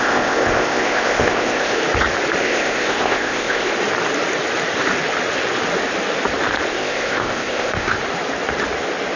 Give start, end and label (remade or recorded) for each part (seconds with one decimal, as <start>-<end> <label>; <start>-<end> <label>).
0.0-1.8 remade; 1.8-2.4 recorded; 2.4-3.7 remade; 3.7-6.7 recorded; 6.7-8.0 remade; 8.0-9.2 recorded